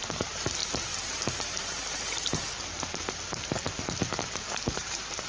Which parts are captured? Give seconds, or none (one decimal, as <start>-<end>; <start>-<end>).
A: none